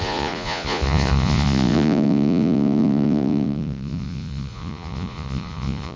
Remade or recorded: remade